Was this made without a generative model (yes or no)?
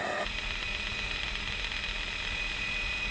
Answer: yes